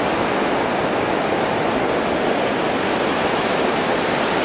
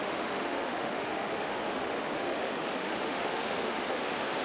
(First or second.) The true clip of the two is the first